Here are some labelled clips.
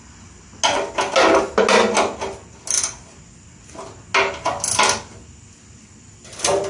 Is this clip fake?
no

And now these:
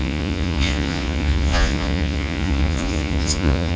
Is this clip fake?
yes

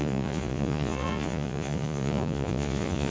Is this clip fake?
yes